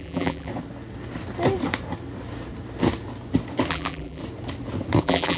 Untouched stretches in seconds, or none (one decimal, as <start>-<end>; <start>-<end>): 0.5-3.7; 4.2-5.0